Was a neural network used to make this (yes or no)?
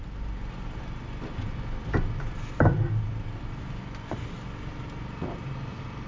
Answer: no